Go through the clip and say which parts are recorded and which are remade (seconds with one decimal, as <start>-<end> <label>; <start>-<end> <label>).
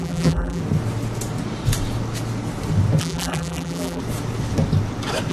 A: 0.0-0.6 remade; 0.6-3.0 recorded; 3.0-4.0 remade; 4.0-5.3 recorded